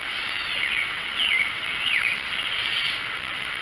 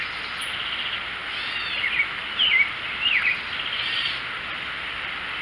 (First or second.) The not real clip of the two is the first